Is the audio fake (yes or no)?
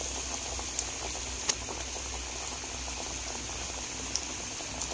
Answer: no